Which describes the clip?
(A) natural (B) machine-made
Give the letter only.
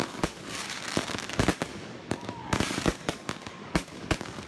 B